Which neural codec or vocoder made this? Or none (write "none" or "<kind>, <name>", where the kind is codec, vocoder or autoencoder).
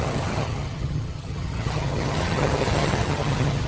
vocoder, HiFi-GAN